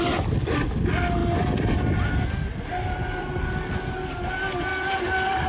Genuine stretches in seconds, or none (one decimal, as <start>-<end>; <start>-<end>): 0.0-5.5